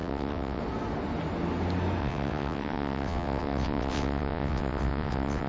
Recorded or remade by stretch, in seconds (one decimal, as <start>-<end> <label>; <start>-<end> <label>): 0.0-0.6 remade; 0.6-2.0 recorded; 2.0-5.5 remade